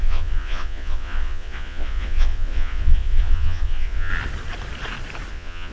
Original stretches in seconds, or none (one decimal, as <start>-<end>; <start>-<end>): 4.1-5.3